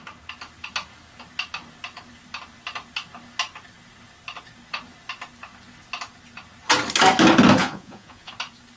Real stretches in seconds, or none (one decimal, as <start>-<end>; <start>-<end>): 0.0-7.6; 8.3-8.8